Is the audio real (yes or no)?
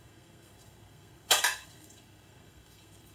no